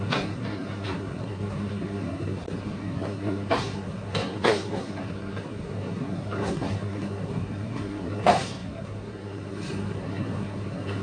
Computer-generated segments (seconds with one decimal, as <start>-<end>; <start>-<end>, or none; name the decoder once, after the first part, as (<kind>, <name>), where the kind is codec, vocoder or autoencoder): 0.0-11.0 (codec, SNAC)